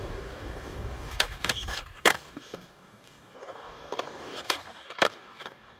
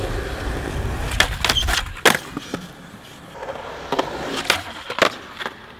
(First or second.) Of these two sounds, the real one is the second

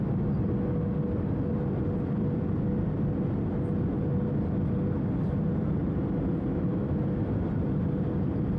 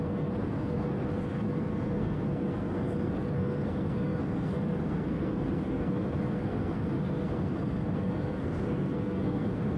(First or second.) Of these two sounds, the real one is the first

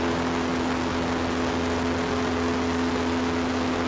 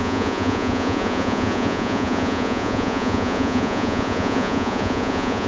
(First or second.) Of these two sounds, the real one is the first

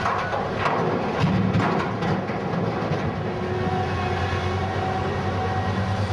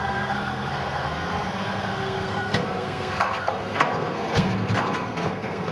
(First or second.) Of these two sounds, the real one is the first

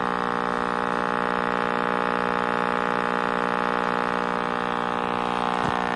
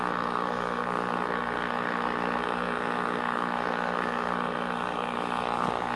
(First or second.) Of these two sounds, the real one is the first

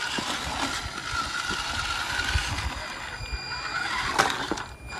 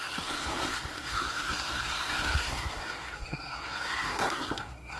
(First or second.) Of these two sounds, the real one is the first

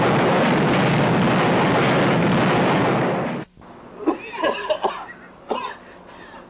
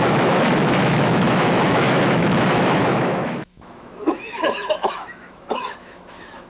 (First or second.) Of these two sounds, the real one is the first